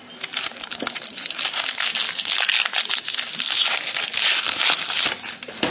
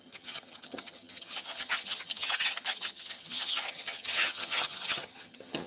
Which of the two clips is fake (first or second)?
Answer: second